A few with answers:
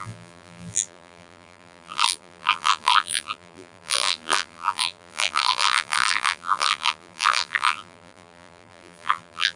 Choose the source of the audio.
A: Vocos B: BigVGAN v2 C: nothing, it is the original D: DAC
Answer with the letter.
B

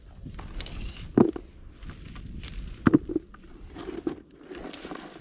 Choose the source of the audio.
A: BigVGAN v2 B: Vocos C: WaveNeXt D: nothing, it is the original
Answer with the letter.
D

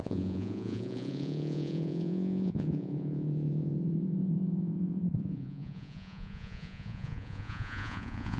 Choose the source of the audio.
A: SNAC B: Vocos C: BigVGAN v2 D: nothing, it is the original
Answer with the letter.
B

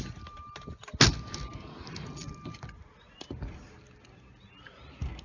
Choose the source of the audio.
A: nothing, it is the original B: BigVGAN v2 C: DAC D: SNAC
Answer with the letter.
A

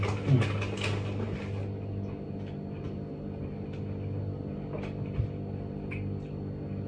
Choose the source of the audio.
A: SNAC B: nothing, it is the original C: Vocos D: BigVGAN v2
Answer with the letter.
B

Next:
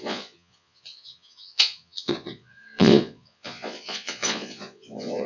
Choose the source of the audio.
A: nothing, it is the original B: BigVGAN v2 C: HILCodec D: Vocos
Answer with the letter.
D